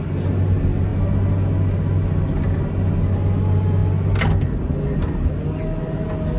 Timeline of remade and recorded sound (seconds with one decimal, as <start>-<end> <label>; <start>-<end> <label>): 0.0-6.4 recorded